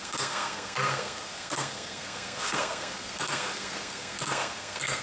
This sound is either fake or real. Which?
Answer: fake